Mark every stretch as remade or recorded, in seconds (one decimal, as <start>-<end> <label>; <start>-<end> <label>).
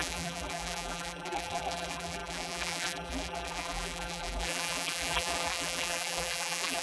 0.0-6.8 remade